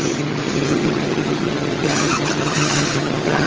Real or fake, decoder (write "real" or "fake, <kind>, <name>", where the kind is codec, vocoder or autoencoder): fake, vocoder, HiFi-GAN